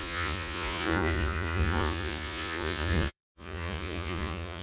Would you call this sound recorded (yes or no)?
no